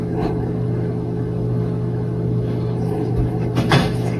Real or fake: fake